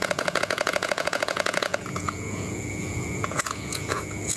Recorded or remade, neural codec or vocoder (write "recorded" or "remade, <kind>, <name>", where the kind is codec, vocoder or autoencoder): remade, vocoder, Vocos